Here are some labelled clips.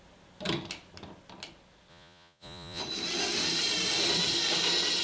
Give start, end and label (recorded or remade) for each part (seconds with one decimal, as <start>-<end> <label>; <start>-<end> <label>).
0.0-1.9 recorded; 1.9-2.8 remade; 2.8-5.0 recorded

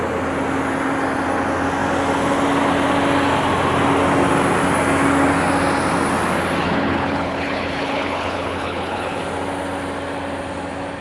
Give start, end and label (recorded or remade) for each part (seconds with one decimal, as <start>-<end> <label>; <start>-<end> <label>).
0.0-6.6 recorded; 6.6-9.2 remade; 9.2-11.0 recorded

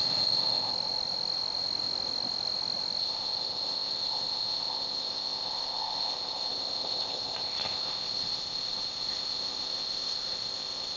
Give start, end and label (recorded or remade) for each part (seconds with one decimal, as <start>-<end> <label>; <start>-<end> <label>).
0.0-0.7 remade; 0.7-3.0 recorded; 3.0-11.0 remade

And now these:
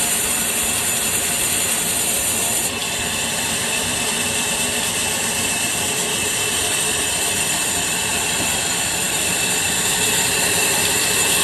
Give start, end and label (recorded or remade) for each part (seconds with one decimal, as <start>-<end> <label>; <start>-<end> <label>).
0.0-11.4 remade